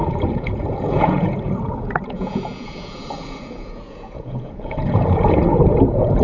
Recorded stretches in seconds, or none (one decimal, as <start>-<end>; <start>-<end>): none